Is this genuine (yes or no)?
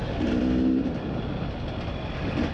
yes